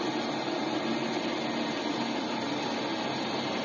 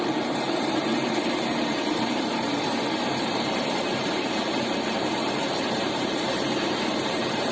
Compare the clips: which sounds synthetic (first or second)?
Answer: second